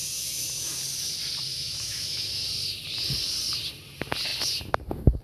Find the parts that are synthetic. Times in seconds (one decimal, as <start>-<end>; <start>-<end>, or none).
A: 0.0-0.8; 1.5-2.3